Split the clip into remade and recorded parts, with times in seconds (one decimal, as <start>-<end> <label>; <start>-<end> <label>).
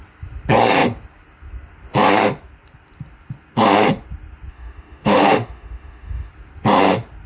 0.0-4.5 recorded; 4.5-6.3 remade; 6.3-7.3 recorded